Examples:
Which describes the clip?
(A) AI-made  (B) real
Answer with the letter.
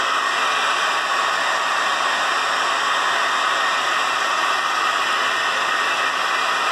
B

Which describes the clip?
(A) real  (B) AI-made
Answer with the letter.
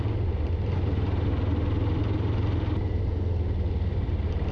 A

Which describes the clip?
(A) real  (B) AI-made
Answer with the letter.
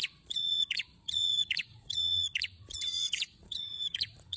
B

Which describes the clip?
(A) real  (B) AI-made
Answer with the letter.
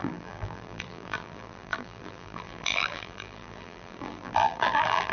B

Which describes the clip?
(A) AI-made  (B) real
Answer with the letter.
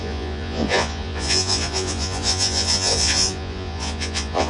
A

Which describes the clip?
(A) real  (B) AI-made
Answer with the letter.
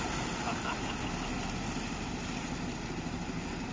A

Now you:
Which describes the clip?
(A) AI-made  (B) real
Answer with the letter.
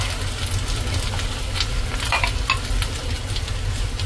B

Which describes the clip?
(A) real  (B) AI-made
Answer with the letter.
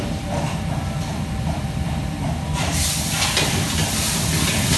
B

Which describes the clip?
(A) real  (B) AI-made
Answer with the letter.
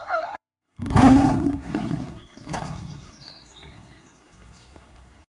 B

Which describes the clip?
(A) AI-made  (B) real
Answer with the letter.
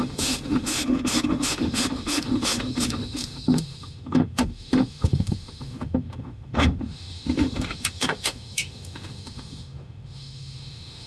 A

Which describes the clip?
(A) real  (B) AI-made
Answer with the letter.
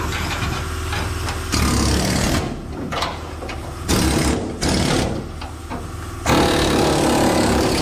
A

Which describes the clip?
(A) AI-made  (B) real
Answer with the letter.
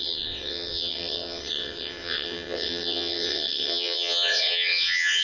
A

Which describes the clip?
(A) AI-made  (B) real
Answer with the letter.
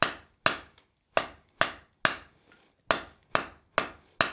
B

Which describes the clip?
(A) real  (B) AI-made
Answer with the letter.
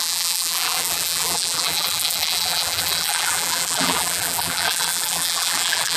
B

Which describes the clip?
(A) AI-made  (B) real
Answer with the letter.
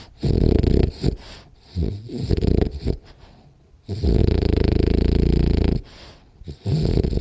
B